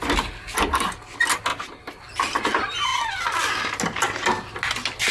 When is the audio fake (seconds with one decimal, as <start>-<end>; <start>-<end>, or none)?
none